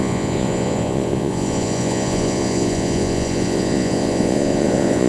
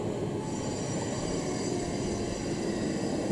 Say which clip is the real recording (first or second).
second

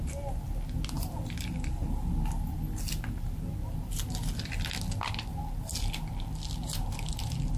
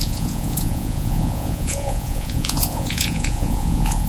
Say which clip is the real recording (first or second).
first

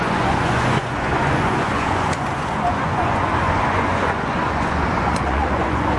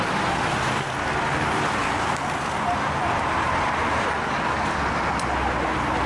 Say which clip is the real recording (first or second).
second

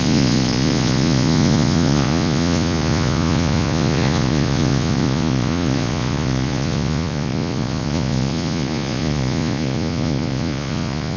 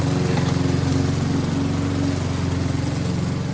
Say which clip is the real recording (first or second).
second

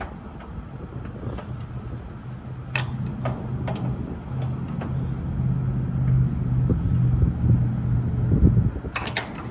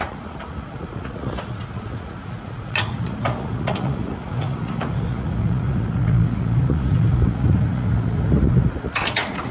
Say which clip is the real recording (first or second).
first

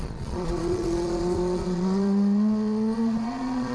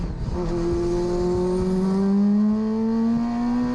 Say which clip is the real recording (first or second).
second